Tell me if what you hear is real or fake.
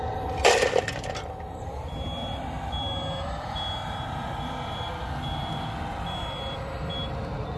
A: real